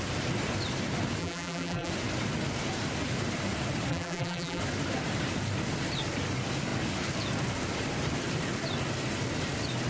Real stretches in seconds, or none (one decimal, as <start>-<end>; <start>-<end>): 0.0-1.2; 1.9-3.9; 4.6-9.9